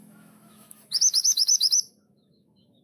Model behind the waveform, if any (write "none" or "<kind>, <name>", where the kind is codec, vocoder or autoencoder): autoencoder, DAC-VAE